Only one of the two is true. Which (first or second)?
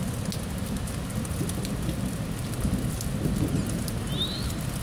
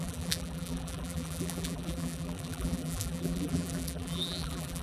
first